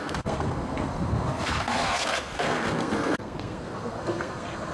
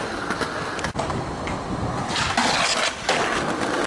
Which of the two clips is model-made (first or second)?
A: first